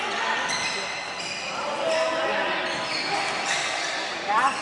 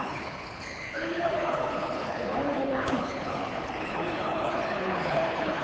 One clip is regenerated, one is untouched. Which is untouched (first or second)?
first